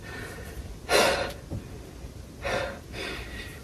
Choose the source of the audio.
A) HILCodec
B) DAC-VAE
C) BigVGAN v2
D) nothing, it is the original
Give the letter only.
D